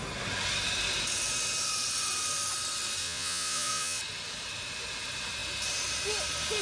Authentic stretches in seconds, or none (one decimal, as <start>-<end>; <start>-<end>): 0.0-3.0; 4.0-6.6